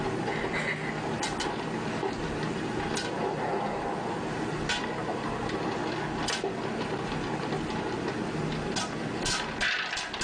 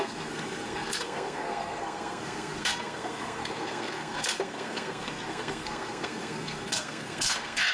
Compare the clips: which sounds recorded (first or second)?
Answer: first